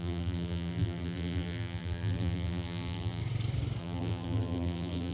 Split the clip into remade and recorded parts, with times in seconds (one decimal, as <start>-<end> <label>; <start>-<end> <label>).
0.0-3.2 remade; 3.2-3.8 recorded; 3.8-5.1 remade